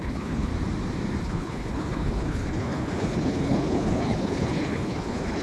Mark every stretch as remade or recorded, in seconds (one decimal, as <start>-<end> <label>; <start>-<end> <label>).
0.0-0.5 remade; 0.5-1.2 recorded; 1.2-5.4 remade